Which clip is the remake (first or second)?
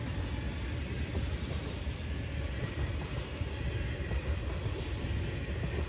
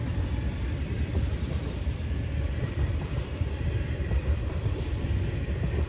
second